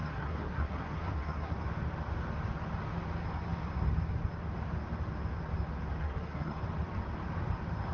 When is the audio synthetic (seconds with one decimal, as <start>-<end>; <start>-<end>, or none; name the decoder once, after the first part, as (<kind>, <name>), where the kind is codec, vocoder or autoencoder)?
0.0-1.5 (codec, SNAC); 6.0-6.6